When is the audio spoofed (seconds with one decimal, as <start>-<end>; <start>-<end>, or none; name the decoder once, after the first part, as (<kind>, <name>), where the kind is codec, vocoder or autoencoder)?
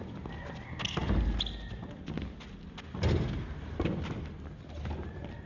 none